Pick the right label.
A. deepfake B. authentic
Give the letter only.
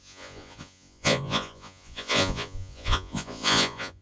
A